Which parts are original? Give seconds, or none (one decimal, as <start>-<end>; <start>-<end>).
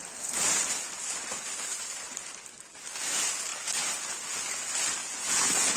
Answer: 0.0-5.0